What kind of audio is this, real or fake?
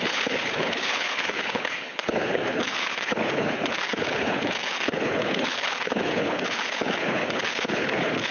fake